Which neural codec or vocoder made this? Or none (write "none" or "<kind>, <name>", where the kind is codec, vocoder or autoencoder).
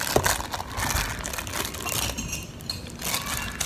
none